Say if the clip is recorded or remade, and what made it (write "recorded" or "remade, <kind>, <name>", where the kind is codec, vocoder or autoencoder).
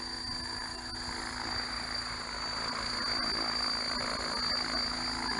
recorded